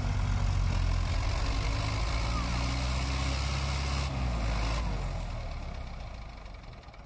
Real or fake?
real